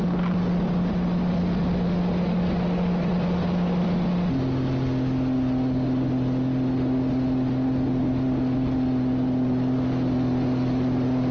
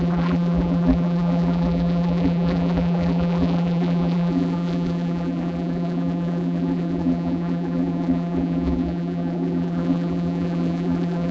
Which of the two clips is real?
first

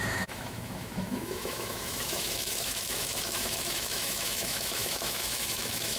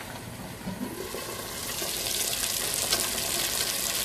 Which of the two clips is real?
second